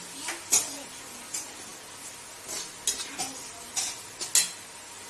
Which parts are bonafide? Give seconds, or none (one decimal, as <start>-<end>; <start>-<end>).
0.0-5.1